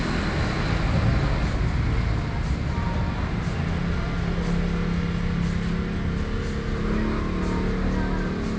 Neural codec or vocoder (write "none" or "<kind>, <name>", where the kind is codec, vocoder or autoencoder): none